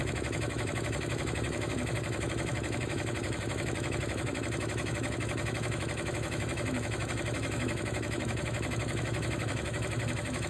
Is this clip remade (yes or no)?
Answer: yes